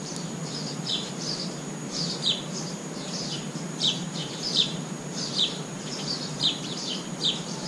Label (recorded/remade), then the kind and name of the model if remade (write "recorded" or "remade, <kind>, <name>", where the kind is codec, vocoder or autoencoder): remade, vocoder, BigVGAN v2